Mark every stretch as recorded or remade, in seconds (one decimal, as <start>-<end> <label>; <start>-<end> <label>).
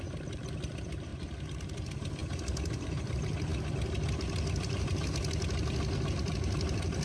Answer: 0.0-3.5 remade; 3.5-6.3 recorded; 6.3-7.0 remade